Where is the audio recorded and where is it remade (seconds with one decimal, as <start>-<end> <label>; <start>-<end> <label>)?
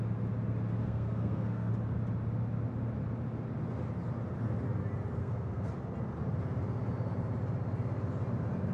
0.0-0.8 recorded; 0.8-1.7 remade; 1.7-5.2 recorded; 5.2-5.7 remade; 5.7-8.7 recorded